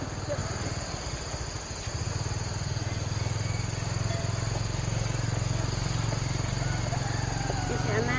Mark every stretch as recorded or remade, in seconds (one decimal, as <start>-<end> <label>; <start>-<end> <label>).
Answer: 0.0-0.4 recorded; 0.4-2.1 remade; 2.1-8.2 recorded